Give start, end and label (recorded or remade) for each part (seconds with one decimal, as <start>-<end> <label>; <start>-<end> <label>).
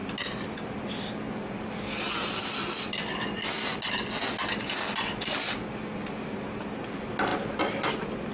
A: 0.0-8.3 recorded